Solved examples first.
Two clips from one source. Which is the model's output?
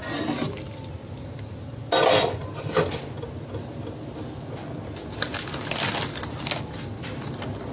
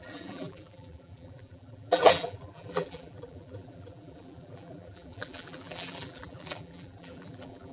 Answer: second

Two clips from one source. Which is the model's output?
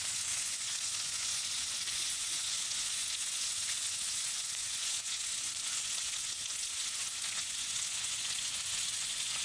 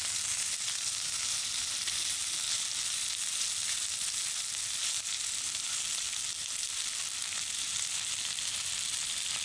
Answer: first